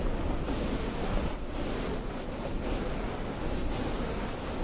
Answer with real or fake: real